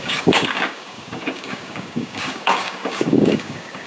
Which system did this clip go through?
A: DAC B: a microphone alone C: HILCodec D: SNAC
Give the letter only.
A